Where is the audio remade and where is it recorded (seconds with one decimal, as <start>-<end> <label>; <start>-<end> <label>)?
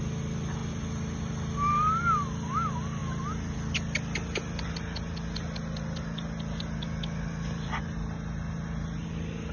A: 0.0-9.5 recorded